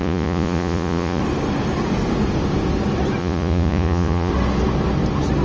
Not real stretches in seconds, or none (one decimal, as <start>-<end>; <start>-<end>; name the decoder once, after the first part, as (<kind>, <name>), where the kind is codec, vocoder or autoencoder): 0.0-1.2 (vocoder, Vocos); 3.2-4.3